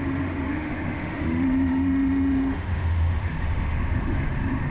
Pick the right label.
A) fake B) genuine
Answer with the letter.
A